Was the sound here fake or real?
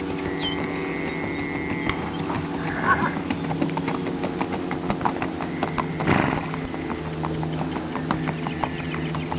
real